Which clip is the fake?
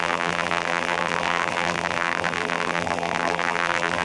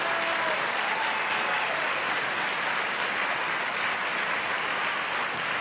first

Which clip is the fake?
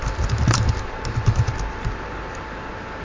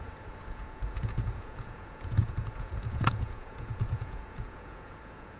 second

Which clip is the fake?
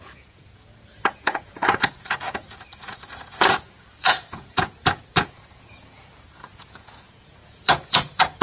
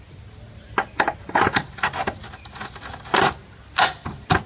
first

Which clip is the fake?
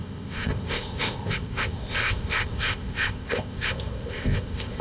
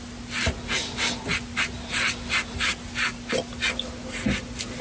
first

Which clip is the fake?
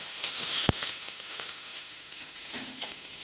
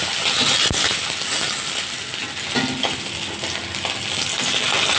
first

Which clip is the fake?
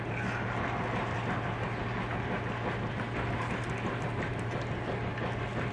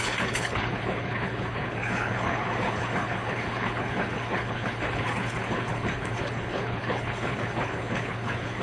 second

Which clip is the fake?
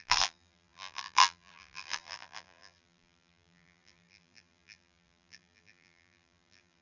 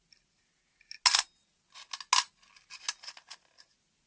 first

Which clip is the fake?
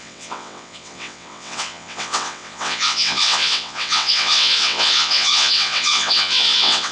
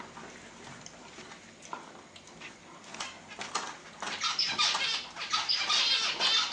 first